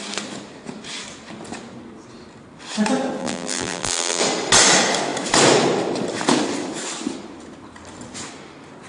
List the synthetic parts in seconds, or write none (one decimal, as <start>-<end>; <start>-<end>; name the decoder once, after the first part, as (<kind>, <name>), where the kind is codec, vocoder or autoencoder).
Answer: 3.2-4.2 (vocoder, BigVGAN v2)